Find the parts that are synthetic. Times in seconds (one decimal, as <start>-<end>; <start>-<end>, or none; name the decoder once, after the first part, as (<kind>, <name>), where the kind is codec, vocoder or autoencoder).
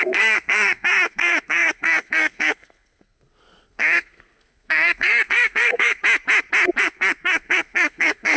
0.0-6.0 (codec, SNAC); 6.8-8.4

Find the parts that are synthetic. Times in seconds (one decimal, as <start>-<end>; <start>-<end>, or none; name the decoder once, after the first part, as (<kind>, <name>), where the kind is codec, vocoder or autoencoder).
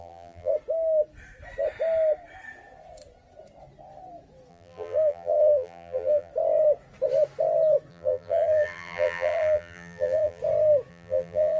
0.0-0.5 (vocoder, BigVGAN v2); 4.5-6.3; 7.9-10.4; 10.9-11.6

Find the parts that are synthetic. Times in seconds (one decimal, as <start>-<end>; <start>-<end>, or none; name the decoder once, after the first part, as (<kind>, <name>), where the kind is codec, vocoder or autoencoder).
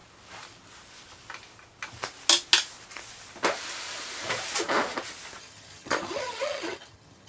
5.4-7.3 (vocoder, HiFi-GAN)